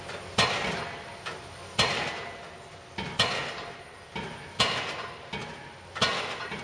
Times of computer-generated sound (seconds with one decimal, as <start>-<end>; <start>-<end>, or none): none